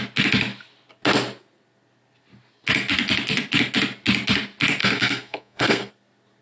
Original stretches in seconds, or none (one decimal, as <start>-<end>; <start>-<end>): 0.0-4.8; 5.9-6.4